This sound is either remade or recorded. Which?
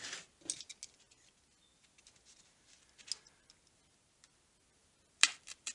recorded